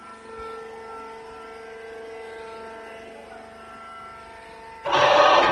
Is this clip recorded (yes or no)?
yes